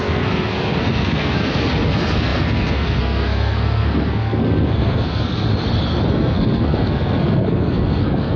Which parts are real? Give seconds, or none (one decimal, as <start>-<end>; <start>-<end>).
5.5-6.1